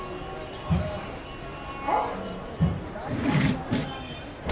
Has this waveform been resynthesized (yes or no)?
no